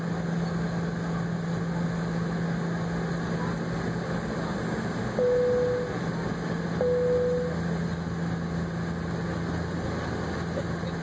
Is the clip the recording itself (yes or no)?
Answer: yes